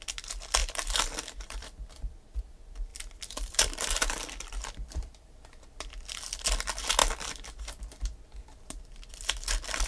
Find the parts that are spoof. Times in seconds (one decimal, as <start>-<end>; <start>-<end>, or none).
0.6-2.4; 2.9-6.2